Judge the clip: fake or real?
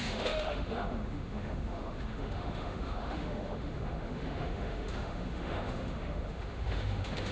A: fake